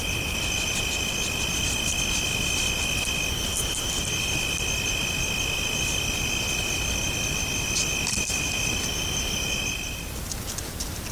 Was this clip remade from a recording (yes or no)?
yes